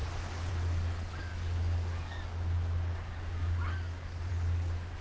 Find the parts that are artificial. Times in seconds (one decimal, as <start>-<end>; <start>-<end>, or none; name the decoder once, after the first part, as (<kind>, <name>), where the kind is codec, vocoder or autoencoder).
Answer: 0.5-5.0 (codec, DAC)